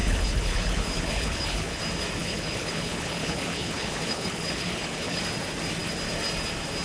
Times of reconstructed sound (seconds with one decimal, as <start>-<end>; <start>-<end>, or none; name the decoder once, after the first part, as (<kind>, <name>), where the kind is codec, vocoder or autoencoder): 0.0-1.8 (codec, HILCodec); 2.2-5.2